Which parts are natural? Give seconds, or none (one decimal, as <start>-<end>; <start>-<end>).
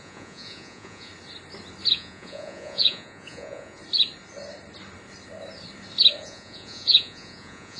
1.1-1.9; 3.8-6.2